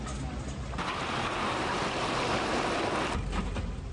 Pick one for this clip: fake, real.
real